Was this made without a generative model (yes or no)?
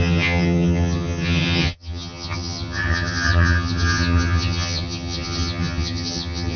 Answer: no